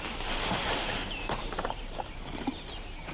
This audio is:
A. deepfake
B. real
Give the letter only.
A